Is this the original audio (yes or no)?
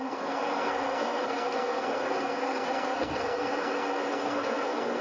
no